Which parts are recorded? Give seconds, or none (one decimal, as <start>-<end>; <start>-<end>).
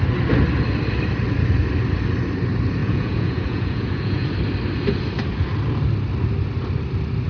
0.0-2.8; 4.3-7.3